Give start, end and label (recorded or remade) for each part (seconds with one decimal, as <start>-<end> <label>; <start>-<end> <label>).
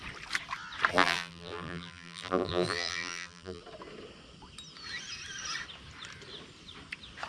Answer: 0.0-0.9 recorded; 0.9-3.6 remade; 3.6-7.3 recorded